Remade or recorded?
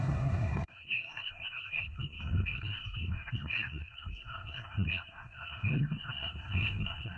remade